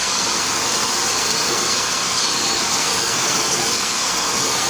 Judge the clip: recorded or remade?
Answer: remade